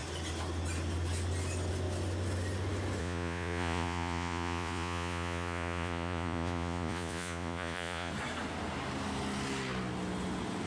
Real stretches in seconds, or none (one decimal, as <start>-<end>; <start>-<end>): 0.0-3.0; 8.1-10.7